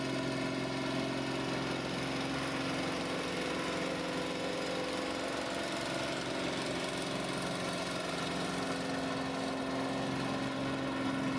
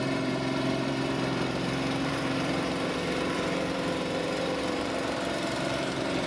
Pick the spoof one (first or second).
second